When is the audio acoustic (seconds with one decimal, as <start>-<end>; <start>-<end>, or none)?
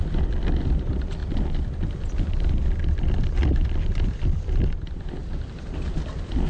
0.0-6.5